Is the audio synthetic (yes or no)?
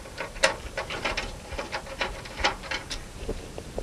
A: yes